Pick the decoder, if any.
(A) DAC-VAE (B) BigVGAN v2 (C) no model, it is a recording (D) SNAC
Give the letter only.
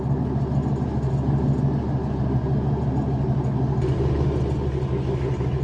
C